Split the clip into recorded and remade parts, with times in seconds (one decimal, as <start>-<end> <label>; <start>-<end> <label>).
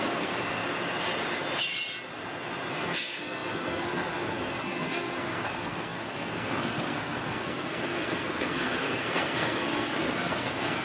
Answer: 0.0-0.6 remade; 0.6-2.7 recorded; 2.7-10.8 remade